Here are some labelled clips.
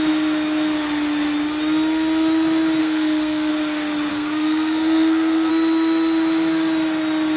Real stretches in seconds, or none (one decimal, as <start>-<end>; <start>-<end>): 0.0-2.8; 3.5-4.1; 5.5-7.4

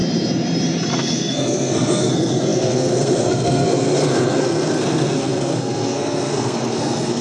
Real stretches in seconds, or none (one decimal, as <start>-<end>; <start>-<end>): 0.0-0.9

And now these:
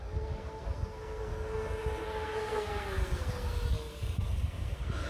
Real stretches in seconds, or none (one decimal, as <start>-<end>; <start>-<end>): none

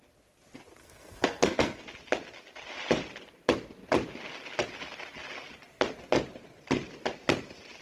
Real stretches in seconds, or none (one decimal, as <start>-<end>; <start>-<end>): 0.0-0.8; 1.8-7.8

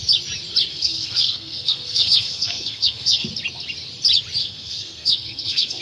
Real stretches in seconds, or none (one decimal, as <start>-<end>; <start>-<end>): 0.0-0.7; 3.3-4.4